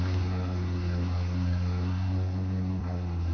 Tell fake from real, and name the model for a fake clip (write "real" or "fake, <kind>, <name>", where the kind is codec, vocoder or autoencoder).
fake, codec, SNAC